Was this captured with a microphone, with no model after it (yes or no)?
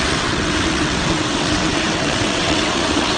no